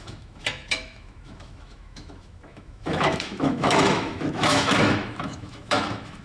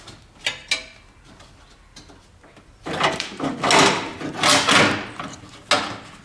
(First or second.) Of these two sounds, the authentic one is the second